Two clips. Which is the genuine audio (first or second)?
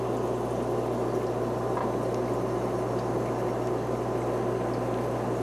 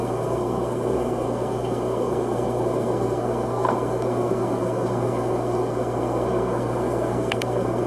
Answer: first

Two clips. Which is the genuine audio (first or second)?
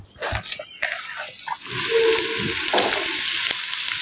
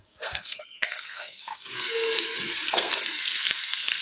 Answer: first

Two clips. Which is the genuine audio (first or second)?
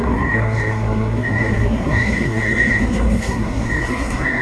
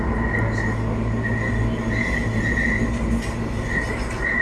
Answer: second